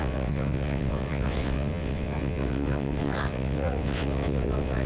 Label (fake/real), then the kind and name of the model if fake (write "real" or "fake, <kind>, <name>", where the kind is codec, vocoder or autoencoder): fake, vocoder, WaveNeXt